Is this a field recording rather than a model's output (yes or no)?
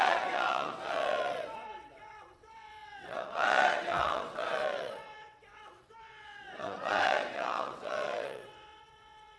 no